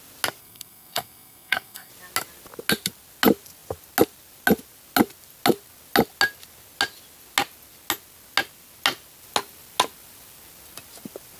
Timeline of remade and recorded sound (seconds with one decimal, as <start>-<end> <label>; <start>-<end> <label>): 0.0-0.4 recorded; 0.4-1.9 remade; 1.9-11.4 recorded